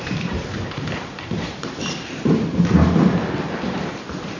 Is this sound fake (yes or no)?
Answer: yes